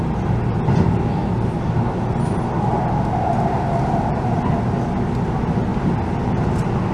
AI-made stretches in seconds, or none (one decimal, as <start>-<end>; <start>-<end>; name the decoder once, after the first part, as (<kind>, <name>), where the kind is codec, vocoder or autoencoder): none